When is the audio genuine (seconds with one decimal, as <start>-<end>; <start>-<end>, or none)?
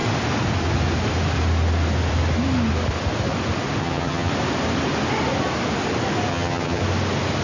0.0-3.8; 4.3-6.3; 6.8-7.4